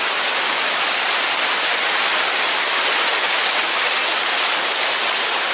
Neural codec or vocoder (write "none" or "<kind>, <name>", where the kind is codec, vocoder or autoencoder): none